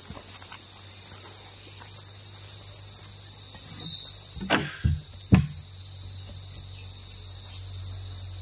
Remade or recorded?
recorded